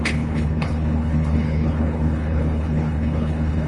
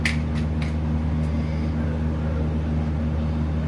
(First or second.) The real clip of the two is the second